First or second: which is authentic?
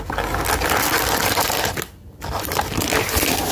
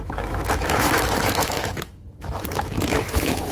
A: first